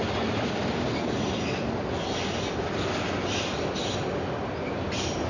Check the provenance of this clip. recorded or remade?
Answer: recorded